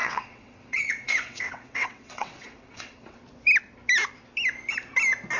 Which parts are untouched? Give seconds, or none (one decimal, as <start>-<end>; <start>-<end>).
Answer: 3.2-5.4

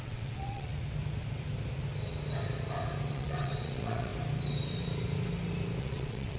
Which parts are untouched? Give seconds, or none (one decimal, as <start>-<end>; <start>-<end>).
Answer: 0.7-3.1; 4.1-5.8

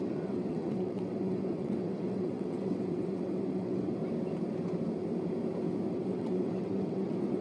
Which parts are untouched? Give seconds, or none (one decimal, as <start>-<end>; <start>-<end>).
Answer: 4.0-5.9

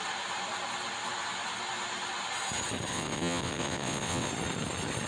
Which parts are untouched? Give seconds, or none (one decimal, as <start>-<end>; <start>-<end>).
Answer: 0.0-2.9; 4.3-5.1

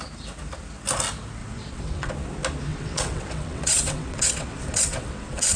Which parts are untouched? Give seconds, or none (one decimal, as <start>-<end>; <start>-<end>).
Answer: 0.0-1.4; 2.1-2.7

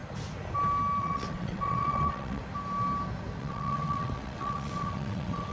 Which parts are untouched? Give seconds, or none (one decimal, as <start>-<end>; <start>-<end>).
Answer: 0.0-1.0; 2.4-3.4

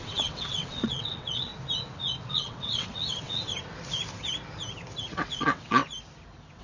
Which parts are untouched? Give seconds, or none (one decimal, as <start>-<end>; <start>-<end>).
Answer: 1.5-2.3; 3.5-5.0; 5.8-6.6

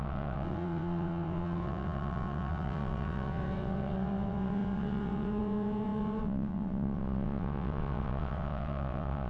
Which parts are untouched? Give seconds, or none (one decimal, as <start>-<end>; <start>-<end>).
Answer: none